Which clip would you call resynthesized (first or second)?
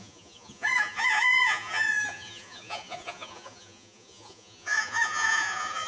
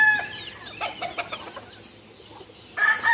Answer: first